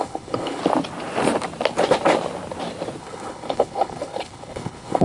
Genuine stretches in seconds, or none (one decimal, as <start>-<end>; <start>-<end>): 0.6-3.0